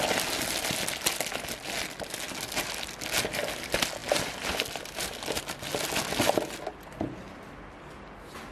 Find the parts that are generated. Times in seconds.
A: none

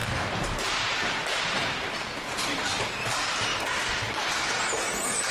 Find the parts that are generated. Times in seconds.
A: 0.0-2.8 (vocoder, BigVGAN v2); 3.5-4.4

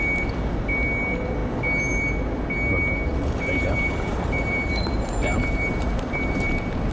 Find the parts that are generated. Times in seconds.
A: 3.1-6.5 (vocoder, BigVGAN v2)

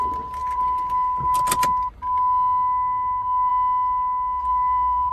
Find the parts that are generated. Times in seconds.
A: 4.5-5.1 (vocoder, BigVGAN v2)